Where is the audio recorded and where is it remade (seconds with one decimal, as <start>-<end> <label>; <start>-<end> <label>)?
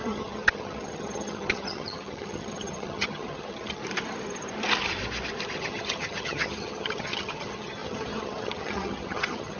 0.0-3.8 remade; 3.8-5.6 recorded; 5.6-9.6 remade